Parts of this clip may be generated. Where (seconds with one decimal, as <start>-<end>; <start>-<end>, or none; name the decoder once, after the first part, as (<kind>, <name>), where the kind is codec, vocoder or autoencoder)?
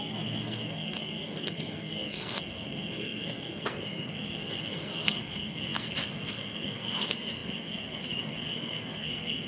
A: 0.0-9.5 (codec, SNAC)